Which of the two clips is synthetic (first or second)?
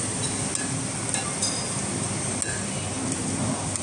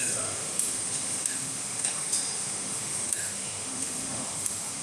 second